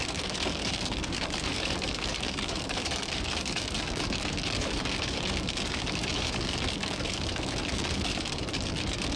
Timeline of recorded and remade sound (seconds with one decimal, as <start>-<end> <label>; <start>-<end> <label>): 0.0-9.2 remade